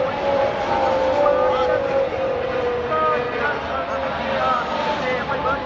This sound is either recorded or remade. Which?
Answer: recorded